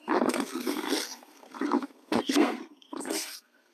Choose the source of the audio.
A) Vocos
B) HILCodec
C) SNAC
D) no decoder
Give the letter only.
C